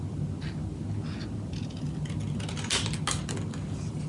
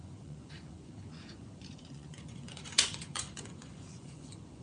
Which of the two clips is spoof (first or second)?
second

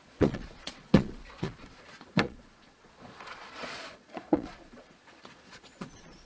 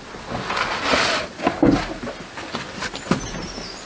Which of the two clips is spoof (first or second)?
first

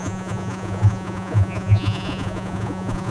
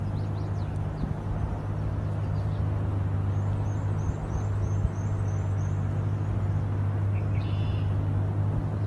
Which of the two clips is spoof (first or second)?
first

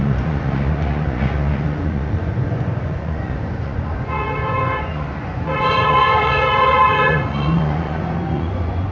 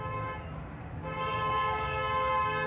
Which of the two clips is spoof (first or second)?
first